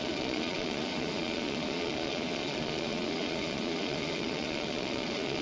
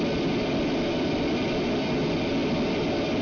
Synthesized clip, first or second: first